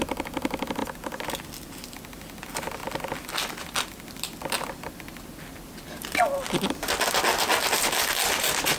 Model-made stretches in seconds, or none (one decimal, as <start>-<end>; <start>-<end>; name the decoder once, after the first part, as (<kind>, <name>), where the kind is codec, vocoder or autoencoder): none